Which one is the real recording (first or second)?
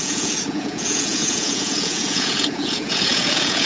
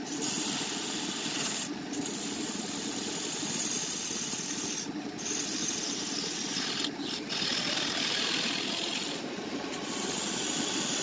second